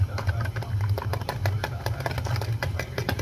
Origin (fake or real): real